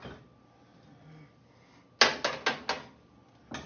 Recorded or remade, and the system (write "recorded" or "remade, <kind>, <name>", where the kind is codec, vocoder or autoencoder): recorded